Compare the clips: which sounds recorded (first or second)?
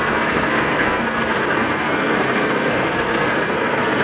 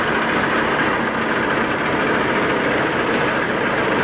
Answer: second